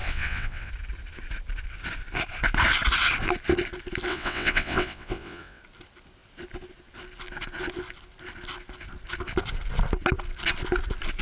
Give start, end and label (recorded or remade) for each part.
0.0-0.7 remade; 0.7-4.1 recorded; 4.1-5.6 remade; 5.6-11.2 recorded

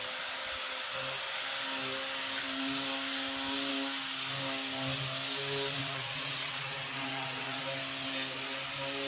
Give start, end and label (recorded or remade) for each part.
0.0-5.8 recorded; 5.8-7.6 remade; 7.6-9.1 recorded

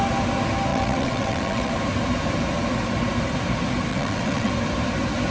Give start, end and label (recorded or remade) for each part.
0.0-0.7 recorded; 0.7-1.7 remade; 1.7-3.9 recorded; 3.9-4.5 remade; 4.5-5.3 recorded

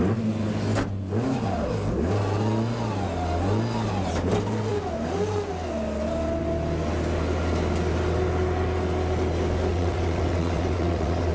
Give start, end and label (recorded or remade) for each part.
0.0-9.7 recorded; 9.7-11.3 remade

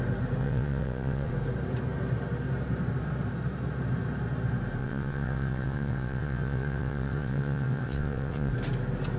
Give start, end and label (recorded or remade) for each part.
0.0-0.4 recorded; 0.4-1.3 remade; 1.3-4.8 recorded; 4.8-8.5 remade; 8.5-9.2 recorded

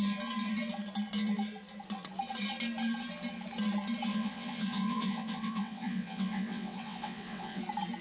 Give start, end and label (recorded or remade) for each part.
0.0-4.1 recorded; 4.1-7.6 remade; 7.6-8.0 recorded

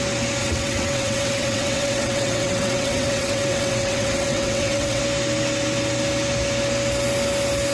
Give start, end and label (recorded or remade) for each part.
0.0-0.4 recorded; 0.4-5.0 remade; 5.0-7.7 recorded

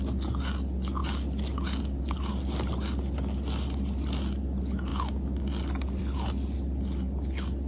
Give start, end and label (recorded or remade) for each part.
0.0-7.7 recorded